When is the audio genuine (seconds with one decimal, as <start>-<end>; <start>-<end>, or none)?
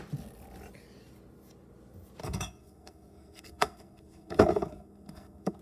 0.0-2.2